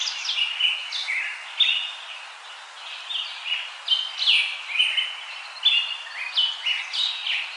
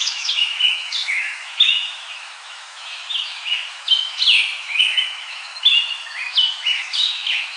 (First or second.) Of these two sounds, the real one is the first